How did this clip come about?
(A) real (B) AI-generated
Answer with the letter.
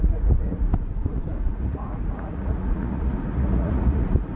B